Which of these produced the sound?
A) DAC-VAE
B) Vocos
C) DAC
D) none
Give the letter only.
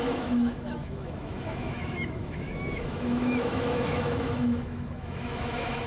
A